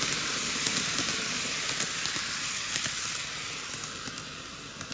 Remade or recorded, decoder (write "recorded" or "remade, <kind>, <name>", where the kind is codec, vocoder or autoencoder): recorded